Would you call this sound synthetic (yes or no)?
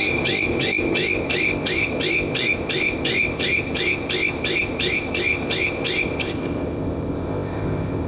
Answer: yes